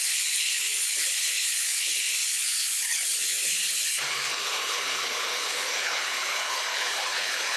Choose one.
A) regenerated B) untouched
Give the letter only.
A